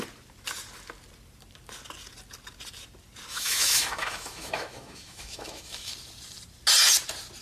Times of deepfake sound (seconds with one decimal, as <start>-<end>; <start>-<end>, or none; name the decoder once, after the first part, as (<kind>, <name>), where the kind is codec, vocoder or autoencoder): 3.3-5.9 (autoencoder, DAC-VAE)

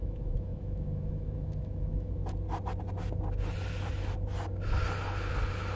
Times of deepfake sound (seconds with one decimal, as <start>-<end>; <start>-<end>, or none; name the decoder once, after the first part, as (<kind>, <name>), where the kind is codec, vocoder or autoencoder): 0.0-2.2 (autoencoder, DAC-VAE)

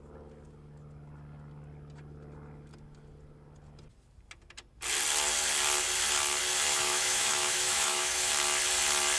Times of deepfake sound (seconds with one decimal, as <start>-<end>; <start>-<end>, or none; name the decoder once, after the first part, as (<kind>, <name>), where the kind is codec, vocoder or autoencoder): 6.7-8.3 (autoencoder, DAC-VAE)

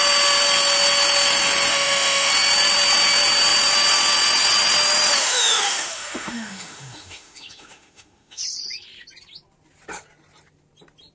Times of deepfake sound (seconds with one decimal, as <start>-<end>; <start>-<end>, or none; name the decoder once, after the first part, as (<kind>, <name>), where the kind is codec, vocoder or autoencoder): 1.7-2.3 (autoencoder, DAC-VAE); 5.2-8.4

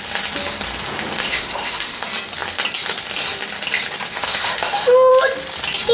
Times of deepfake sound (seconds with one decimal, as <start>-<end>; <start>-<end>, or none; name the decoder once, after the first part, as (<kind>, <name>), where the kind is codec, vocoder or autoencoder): 1.2-2.0 (autoencoder, DAC-VAE); 4.1-5.1

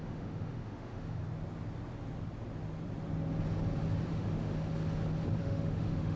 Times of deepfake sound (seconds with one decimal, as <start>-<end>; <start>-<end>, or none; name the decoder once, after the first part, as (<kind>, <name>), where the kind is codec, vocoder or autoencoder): 0.0-1.2 (autoencoder, DAC-VAE); 4.1-4.5; 5.4-6.2

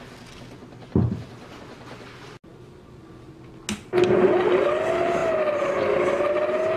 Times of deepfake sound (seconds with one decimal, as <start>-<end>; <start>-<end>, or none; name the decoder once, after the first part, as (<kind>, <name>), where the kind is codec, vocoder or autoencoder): none

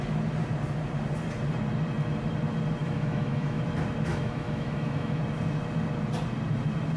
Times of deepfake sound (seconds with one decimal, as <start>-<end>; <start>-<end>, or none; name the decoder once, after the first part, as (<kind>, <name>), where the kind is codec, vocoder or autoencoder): 2.8-3.6 (autoencoder, DAC-VAE); 4.1-5.2